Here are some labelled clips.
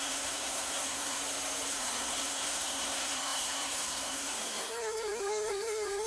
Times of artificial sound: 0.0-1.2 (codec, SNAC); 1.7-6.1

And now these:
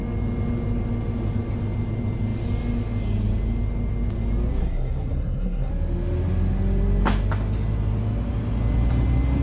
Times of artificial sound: 4.6-5.7 (codec, SNAC)

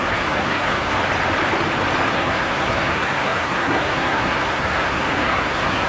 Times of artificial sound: 0.0-1.0 (codec, SNAC); 2.1-5.9

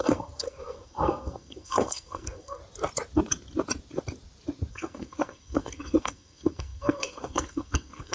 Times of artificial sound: 0.0-2.6 (codec, SNAC); 4.7-8.1